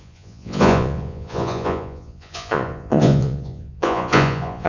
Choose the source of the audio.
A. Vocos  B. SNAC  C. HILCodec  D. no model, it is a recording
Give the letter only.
A